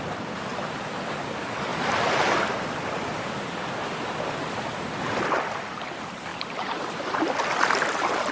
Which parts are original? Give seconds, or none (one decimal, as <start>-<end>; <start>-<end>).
0.0-0.5; 1.2-6.3; 7.8-8.3